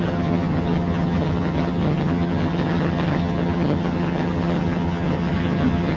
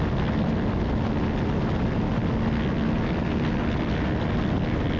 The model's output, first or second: first